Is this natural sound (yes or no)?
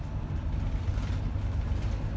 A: yes